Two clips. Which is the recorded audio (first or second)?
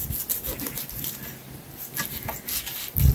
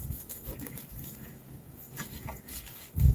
first